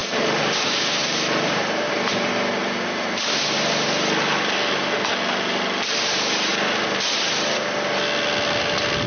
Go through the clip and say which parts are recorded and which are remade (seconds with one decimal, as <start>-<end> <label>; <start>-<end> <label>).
0.0-2.1 remade; 2.1-2.6 recorded; 2.6-3.3 remade; 3.3-9.1 recorded